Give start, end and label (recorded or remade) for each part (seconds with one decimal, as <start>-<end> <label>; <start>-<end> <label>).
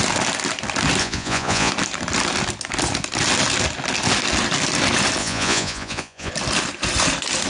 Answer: 0.0-1.0 recorded; 1.0-1.7 remade; 1.7-5.2 recorded; 5.2-6.3 remade; 6.3-7.5 recorded